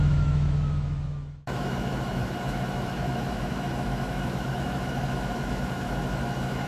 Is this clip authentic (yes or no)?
no